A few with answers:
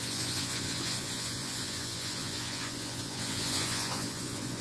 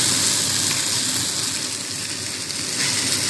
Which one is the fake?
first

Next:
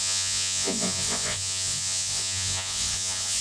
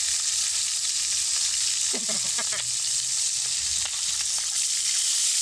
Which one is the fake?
first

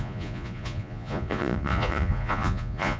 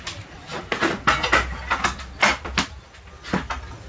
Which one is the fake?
first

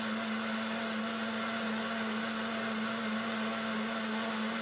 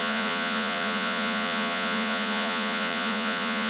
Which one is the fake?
second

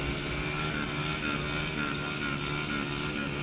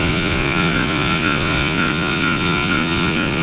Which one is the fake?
second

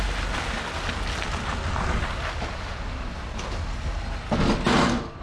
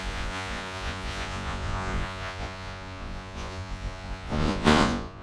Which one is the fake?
second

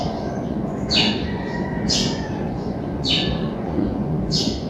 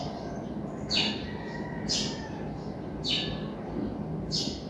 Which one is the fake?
first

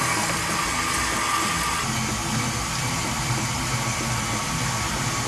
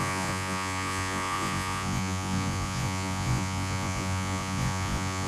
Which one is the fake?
second